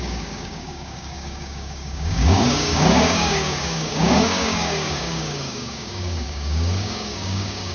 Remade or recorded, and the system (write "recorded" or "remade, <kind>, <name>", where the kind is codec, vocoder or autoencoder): remade, codec, DAC